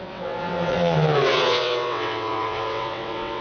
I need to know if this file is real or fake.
fake